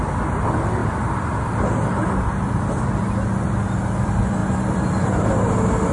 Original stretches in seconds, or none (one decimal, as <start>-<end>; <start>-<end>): 0.0-0.8; 2.7-5.9